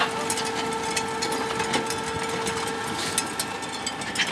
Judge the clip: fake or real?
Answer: real